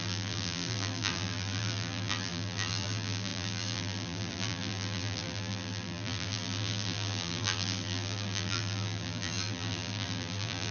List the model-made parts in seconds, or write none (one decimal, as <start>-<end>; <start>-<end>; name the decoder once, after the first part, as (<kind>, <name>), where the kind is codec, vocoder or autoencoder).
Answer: 0.0-10.7 (vocoder, BigVGAN v2)